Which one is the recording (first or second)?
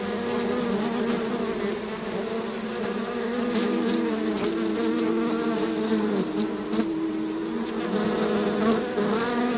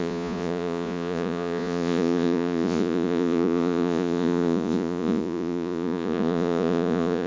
first